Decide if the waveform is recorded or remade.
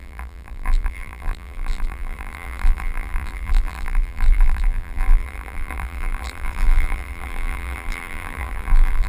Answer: remade